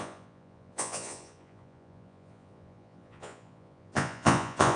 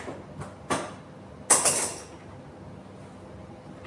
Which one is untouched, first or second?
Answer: second